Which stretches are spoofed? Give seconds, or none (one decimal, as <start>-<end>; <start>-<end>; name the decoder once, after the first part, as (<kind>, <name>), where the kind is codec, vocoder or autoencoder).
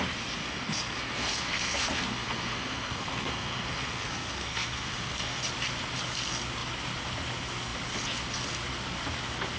0.4-5.4 (codec, SNAC)